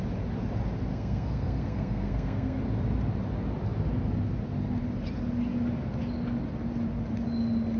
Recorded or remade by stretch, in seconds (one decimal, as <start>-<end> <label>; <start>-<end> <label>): 0.0-0.9 recorded; 0.9-2.6 remade; 2.6-7.8 recorded